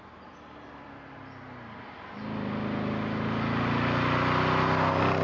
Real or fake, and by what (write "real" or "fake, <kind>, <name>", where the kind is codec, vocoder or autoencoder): real